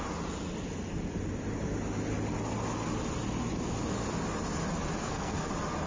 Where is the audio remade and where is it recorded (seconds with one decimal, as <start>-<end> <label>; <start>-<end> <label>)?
0.0-5.0 recorded; 5.0-5.5 remade; 5.5-5.9 recorded